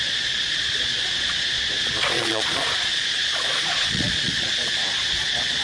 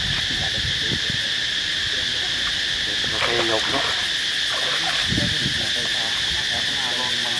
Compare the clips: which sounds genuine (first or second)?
second